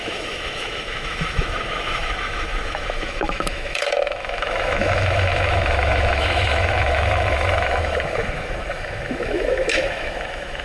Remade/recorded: remade